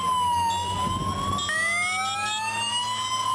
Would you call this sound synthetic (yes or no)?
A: no